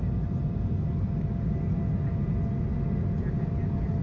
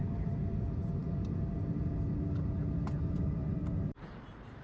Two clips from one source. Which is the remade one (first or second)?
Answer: second